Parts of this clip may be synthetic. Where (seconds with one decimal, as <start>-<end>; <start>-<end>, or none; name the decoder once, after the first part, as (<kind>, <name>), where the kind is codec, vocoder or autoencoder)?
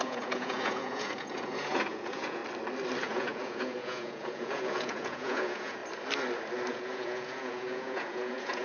0.0-2.4 (vocoder, Vocos); 3.0-5.8; 6.7-8.6